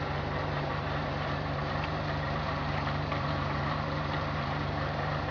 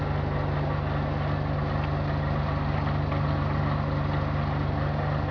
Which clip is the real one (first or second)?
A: second